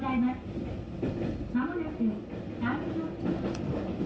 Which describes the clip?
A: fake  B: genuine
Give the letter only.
B